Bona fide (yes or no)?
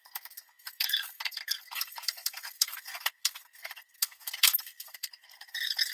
no